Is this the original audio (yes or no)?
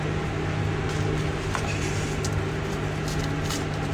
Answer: yes